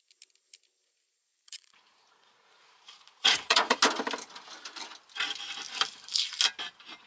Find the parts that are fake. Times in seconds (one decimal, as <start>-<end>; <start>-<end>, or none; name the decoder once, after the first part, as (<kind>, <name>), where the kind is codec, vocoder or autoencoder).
1.3-3.8 (vocoder, Vocos)